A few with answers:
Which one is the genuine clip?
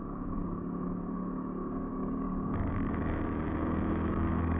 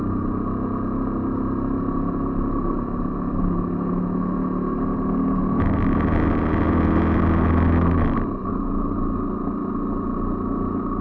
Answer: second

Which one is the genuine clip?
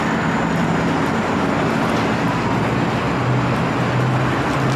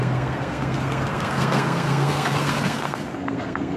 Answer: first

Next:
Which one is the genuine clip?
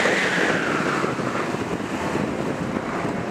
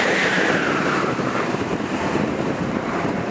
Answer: first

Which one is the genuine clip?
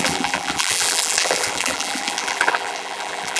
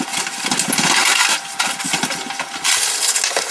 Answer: second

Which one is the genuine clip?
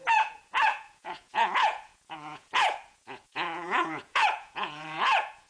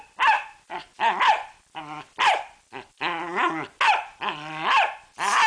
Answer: second